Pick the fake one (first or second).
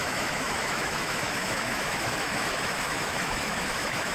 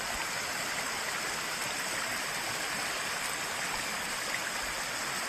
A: first